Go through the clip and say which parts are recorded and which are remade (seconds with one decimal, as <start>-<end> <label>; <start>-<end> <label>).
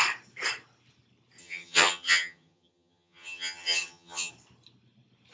0.0-1.4 recorded; 1.4-4.3 remade; 4.3-5.3 recorded